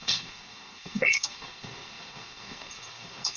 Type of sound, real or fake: fake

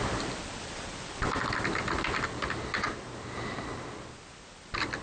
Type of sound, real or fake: real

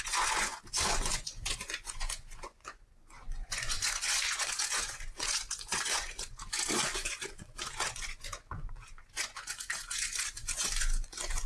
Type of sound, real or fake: fake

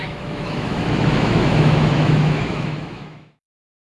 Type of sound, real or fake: fake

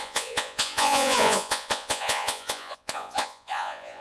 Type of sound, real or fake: fake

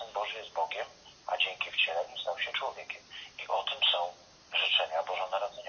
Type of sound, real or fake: real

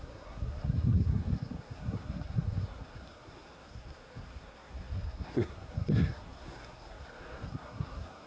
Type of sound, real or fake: fake